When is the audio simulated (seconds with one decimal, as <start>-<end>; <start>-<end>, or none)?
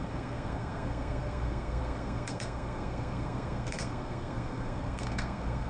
0.0-5.7